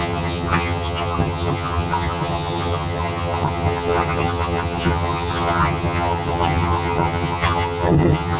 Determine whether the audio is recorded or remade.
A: remade